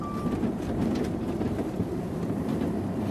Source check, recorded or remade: remade